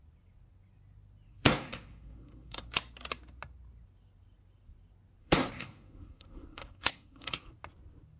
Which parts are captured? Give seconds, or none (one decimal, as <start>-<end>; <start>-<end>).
0.0-1.3; 2.7-5.2; 7.5-8.2